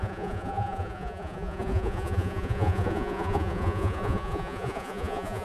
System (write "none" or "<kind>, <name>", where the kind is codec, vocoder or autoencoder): vocoder, Vocos